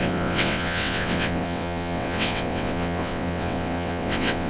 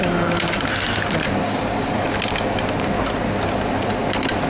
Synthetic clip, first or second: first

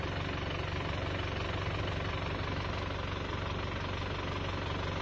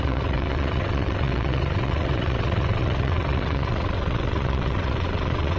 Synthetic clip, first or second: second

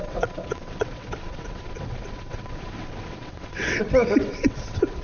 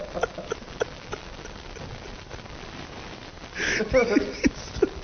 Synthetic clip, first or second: first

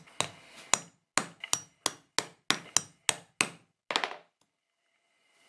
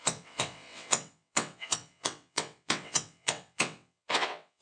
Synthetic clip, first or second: second